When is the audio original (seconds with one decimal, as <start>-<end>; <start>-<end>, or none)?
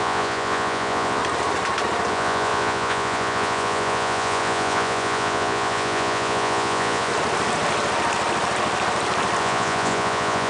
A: 1.2-2.1; 7.1-9.4